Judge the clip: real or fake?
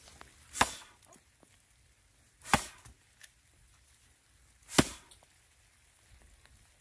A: real